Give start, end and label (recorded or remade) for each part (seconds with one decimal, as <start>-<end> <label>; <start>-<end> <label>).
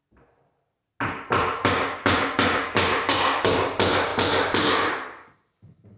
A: 0.0-1.6 recorded; 1.6-3.5 remade; 3.5-6.0 recorded